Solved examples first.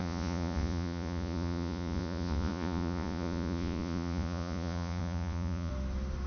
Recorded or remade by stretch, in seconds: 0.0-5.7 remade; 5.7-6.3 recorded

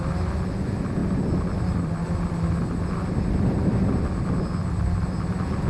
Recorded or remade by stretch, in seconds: 0.0-5.7 recorded

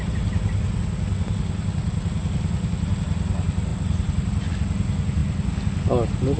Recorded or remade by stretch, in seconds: 0.0-6.4 recorded

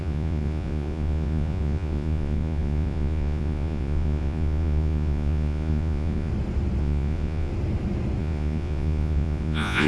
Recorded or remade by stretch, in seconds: 0.0-6.3 remade; 6.3-6.8 recorded; 6.8-7.5 remade; 7.5-8.2 recorded; 8.2-9.9 remade

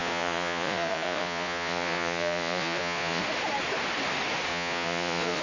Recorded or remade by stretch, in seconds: 0.0-3.2 remade; 3.2-4.5 recorded; 4.5-5.4 remade

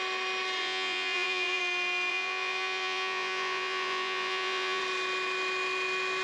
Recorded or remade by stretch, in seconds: 0.0-0.6 recorded; 0.6-1.6 remade; 1.6-2.1 recorded; 2.1-4.8 remade; 4.8-6.2 recorded

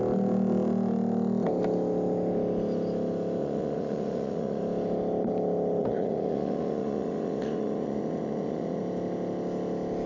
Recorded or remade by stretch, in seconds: 0.0-3.4 recorded; 3.4-4.6 remade; 4.6-5.8 recorded; 5.8-8.8 remade; 8.8-10.1 recorded

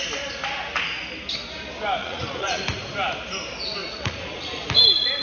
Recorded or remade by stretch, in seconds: 0.0-2.0 recorded; 2.0-2.6 remade; 2.6-3.8 recorded; 3.8-4.6 remade; 4.6-5.2 recorded